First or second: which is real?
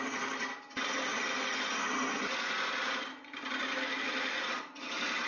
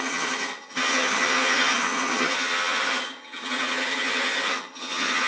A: first